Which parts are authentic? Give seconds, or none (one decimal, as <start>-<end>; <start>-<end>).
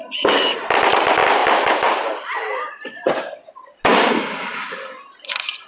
0.0-1.4; 3.5-5.7